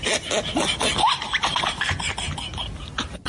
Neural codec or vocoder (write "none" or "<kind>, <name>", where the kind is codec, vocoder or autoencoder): none